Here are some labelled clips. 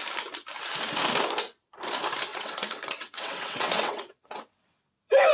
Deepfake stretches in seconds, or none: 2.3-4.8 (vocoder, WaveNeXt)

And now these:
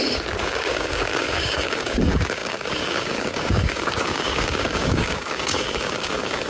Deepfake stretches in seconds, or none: 0.0-6.5 (codec, DAC)

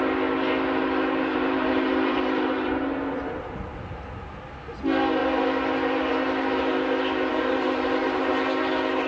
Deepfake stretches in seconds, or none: 1.3-3.4 (vocoder, BigVGAN v2); 7.3-8.3

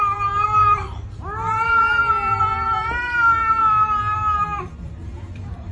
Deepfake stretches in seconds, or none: 0.0-3.6 (vocoder, BigVGAN v2); 4.6-5.7

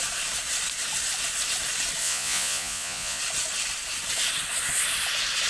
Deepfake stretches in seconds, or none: 2.0-3.2 (vocoder, Vocos)

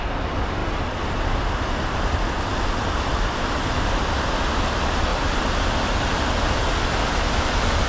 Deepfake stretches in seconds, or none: none

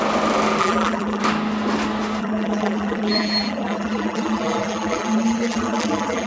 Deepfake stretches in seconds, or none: 0.6-1.2 (vocoder, BigVGAN v2); 2.2-6.3

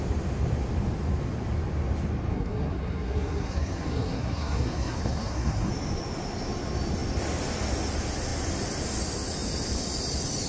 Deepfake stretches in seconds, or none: 2.3-5.7 (codec, SNAC)